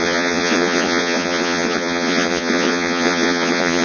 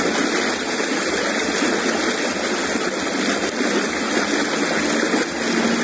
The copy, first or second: first